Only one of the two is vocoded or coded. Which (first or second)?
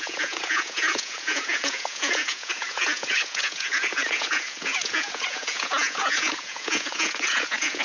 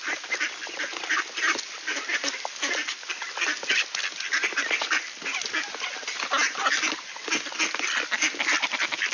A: first